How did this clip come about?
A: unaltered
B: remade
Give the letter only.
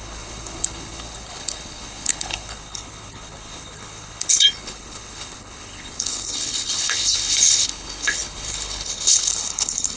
B